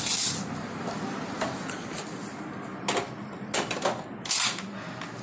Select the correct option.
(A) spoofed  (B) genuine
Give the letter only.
B